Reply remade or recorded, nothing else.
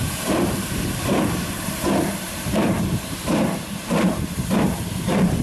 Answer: remade